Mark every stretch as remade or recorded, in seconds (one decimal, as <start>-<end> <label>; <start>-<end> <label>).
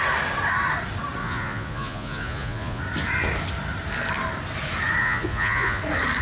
0.0-1.2 recorded; 1.2-2.8 remade; 2.8-5.0 recorded; 5.0-5.8 remade; 5.8-6.2 recorded